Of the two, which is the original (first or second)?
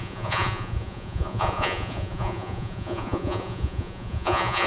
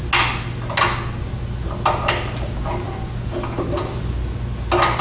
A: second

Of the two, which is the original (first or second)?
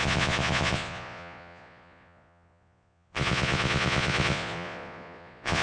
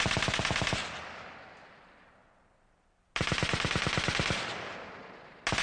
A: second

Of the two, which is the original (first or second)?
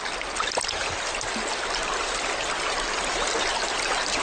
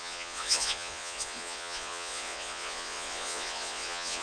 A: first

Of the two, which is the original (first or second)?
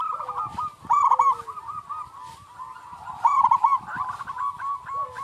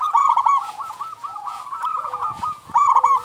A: first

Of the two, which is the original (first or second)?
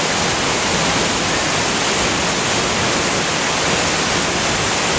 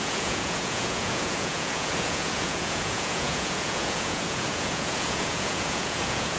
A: first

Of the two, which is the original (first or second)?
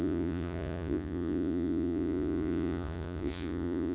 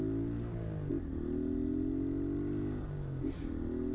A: second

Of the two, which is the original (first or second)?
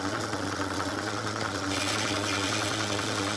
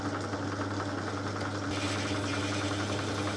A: second